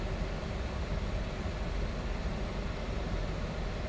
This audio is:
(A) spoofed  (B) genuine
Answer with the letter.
B